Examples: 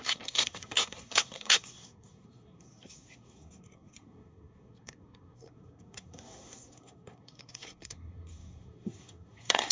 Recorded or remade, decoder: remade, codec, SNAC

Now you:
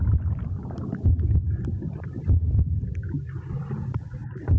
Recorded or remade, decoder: recorded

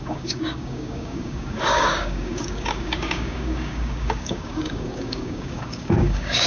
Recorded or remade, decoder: remade, codec, DAC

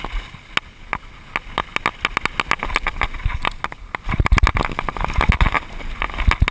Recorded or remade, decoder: recorded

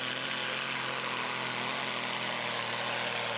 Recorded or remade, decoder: recorded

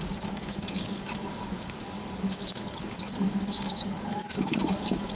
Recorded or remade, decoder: remade, codec, DAC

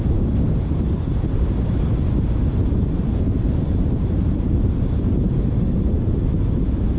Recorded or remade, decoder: remade, vocoder, BigVGAN v2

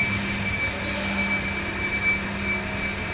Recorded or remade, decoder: recorded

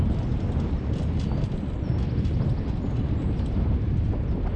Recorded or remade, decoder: recorded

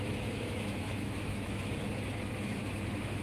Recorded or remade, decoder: remade, autoencoder, DAC-VAE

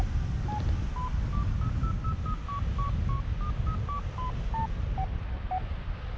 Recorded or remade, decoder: recorded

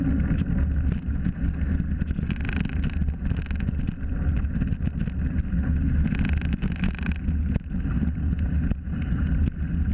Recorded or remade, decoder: recorded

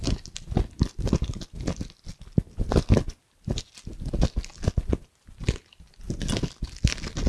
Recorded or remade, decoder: recorded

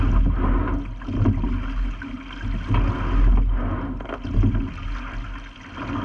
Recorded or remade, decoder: recorded